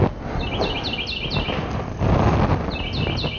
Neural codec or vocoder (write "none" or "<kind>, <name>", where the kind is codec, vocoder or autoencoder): none